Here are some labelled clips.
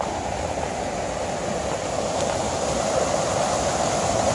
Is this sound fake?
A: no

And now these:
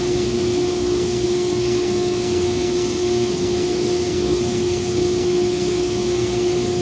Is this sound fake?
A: yes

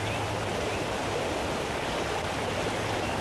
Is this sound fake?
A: no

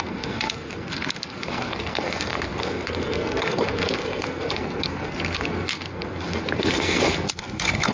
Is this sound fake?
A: yes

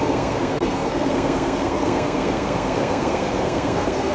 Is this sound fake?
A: yes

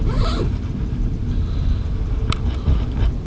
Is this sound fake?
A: no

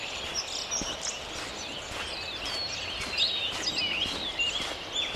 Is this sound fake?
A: no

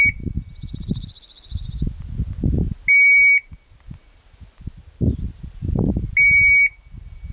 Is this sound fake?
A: no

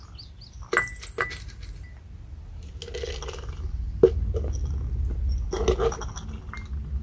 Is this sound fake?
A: no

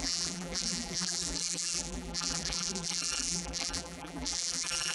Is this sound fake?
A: yes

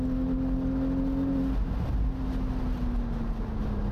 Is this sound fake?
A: no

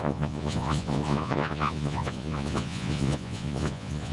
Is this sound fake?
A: yes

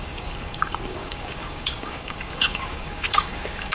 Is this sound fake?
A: yes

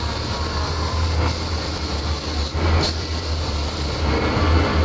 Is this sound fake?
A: no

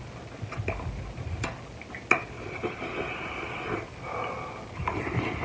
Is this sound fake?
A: no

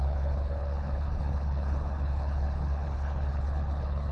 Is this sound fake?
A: yes